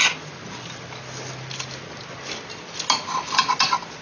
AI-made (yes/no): no